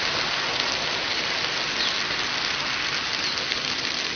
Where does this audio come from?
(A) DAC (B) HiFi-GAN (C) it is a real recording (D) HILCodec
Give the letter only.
C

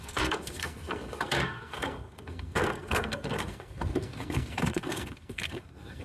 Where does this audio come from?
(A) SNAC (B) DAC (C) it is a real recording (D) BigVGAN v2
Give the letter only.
A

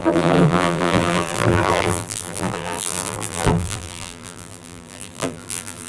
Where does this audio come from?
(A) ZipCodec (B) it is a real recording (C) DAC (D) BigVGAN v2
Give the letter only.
D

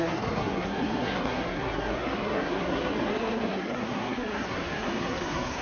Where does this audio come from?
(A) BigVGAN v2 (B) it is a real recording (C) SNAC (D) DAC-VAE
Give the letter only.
C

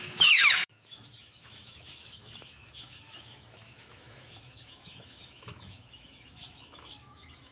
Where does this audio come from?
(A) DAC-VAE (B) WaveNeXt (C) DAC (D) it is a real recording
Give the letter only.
A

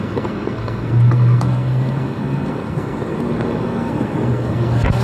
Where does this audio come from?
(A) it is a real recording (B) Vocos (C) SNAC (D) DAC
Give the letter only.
C